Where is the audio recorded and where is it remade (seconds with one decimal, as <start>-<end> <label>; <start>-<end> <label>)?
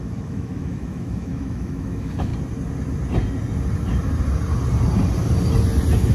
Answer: 0.0-2.3 remade; 2.3-6.1 recorded